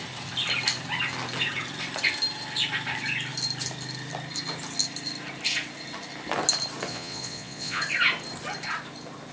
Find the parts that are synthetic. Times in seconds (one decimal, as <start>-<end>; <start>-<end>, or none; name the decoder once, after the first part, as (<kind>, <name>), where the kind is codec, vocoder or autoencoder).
6.9-7.8 (vocoder, Vocos)